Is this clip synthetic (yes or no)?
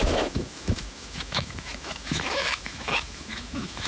yes